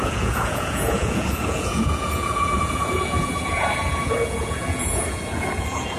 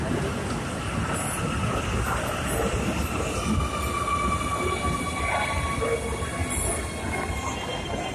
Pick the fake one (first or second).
first